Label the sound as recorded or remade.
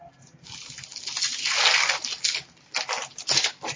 recorded